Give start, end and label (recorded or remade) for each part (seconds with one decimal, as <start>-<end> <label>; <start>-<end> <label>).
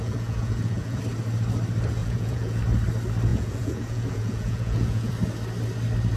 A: 0.0-1.0 remade; 1.0-2.0 recorded; 2.0-2.6 remade; 2.6-3.3 recorded; 3.3-5.1 remade; 5.1-6.2 recorded